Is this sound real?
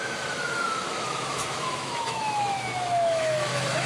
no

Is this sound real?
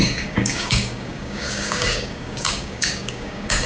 no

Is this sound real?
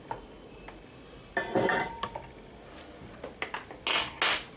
yes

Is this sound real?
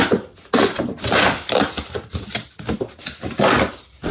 yes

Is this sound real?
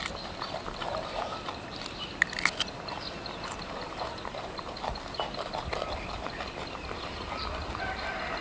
no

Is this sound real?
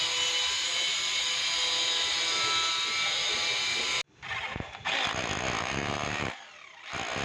yes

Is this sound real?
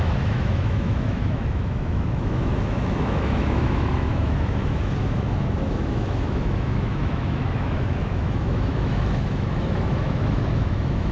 no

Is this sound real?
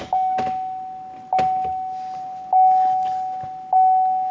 yes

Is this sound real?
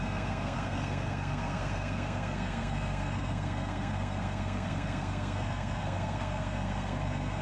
no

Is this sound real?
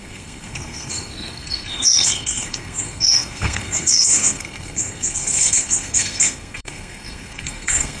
no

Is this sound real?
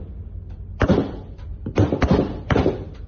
yes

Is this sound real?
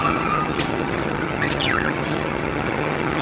no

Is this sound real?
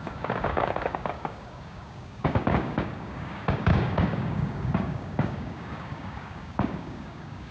no